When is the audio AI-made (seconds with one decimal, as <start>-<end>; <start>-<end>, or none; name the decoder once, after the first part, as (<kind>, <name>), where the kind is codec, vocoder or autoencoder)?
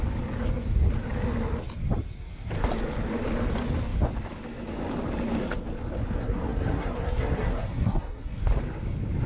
6.2-8.4 (codec, SNAC)